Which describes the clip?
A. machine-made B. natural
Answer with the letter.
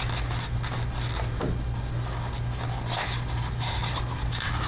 B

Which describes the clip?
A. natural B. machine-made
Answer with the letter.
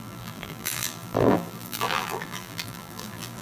B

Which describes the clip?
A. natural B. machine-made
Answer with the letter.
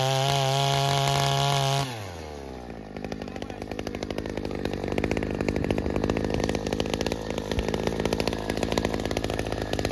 A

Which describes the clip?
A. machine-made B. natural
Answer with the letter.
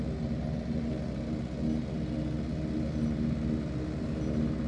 B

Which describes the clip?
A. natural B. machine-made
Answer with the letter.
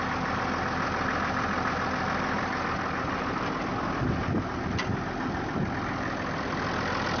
A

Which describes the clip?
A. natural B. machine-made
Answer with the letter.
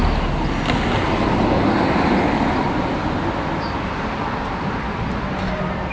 A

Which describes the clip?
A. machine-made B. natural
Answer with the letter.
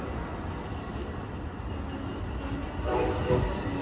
B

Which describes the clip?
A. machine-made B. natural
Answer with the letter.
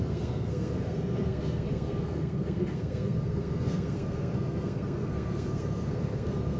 A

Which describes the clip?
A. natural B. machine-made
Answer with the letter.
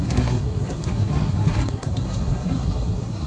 B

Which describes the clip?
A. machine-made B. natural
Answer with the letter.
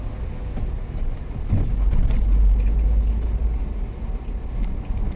B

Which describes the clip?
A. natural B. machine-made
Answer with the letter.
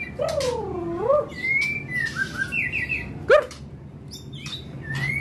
A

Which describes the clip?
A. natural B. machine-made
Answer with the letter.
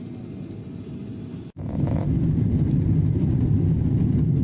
A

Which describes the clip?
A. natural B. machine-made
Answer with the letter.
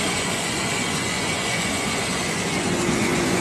B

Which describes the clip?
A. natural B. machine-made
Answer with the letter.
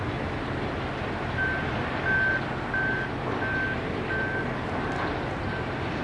A